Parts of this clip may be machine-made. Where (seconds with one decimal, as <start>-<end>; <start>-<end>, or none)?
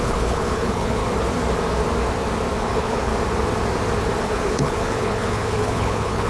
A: 0.0-1.0; 2.6-3.1; 4.2-6.3